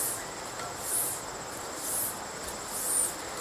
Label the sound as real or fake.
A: real